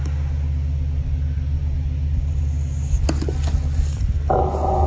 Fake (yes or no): no